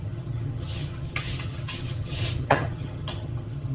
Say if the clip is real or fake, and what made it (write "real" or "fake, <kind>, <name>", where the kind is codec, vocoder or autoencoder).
fake, vocoder, HiFi-GAN